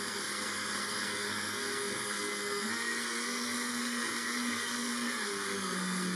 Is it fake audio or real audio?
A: fake